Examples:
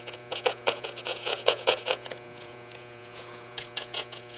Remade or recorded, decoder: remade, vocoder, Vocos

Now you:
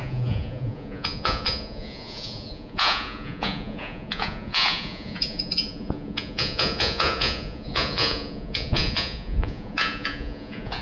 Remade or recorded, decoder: remade, vocoder, Vocos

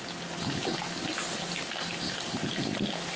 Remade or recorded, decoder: recorded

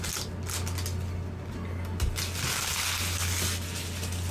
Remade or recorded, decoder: recorded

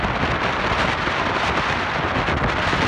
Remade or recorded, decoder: recorded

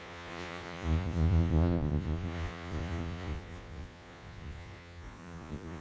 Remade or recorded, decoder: remade, vocoder, Vocos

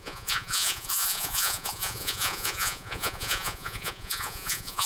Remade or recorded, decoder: remade, vocoder, Vocos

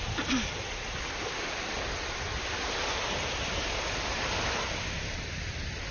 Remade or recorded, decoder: recorded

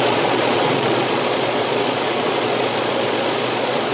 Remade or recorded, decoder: remade, vocoder, Vocos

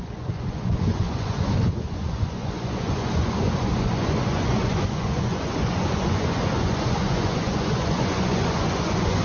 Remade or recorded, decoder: remade, vocoder, Vocos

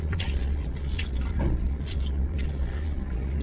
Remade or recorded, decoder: remade, vocoder, Vocos